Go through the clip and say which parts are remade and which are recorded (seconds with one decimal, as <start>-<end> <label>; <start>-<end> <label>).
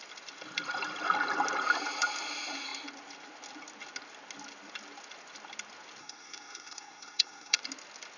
0.0-6.0 recorded; 6.0-7.6 remade; 7.6-8.2 recorded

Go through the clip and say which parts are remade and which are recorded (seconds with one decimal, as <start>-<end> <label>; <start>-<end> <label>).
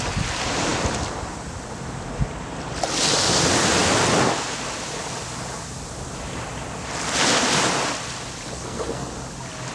0.0-8.5 recorded; 8.5-9.1 remade; 9.1-9.7 recorded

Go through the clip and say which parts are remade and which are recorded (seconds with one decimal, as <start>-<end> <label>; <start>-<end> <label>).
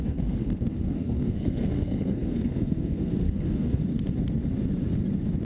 0.0-3.8 remade; 3.8-5.4 recorded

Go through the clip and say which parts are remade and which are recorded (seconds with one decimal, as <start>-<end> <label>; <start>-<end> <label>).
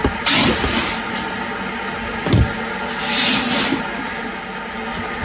0.0-5.2 recorded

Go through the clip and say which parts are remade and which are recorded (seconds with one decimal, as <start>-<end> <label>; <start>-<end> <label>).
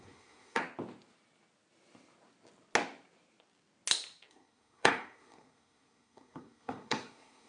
0.0-0.6 remade; 0.6-4.3 recorded; 4.3-7.5 remade